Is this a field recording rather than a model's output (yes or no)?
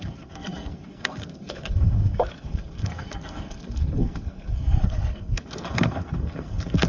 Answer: no